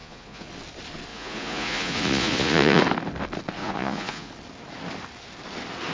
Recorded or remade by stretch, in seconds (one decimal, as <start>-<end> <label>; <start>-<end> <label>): 0.0-0.5 remade; 0.5-1.1 recorded; 1.1-2.8 remade; 2.8-3.6 recorded; 3.6-4.3 remade; 4.3-5.9 recorded